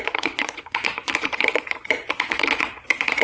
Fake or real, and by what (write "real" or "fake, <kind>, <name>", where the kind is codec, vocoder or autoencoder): fake, vocoder, Vocos